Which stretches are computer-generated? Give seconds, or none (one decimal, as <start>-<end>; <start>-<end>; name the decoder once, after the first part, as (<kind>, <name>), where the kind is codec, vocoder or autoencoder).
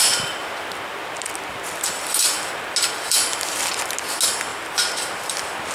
4.5-5.3 (vocoder, BigVGAN v2)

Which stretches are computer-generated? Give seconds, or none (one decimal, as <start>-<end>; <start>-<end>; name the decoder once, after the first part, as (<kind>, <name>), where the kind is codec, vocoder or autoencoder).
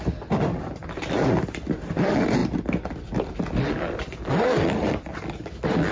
0.0-5.9 (vocoder, BigVGAN v2)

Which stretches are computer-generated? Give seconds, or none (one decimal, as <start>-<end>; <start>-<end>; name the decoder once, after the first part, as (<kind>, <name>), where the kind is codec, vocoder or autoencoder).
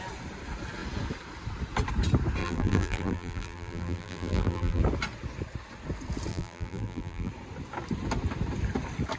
2.4-4.8 (vocoder, BigVGAN v2); 6.3-7.3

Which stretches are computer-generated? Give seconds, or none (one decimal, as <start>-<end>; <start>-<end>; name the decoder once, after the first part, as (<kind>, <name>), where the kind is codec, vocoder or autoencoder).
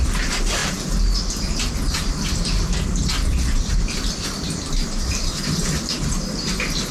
none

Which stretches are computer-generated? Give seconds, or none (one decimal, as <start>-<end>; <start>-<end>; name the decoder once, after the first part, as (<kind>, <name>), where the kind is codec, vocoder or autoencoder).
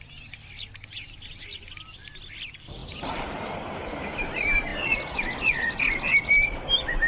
2.8-3.8 (vocoder, BigVGAN v2); 4.7-5.8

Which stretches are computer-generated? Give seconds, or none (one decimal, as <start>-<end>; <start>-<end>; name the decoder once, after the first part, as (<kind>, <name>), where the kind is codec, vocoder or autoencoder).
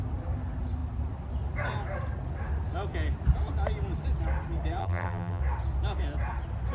4.8-5.4 (vocoder, BigVGAN v2)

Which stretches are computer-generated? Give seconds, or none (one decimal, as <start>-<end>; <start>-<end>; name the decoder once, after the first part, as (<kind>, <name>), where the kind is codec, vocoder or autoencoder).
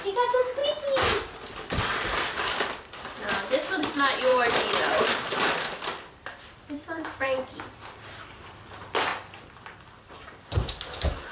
0.0-0.6 (vocoder, BigVGAN v2); 1.8-9.1; 10.1-11.3